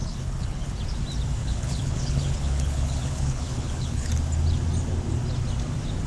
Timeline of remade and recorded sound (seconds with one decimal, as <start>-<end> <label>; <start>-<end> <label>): 0.0-0.8 remade; 0.8-1.4 recorded; 1.4-4.1 remade; 4.1-6.1 recorded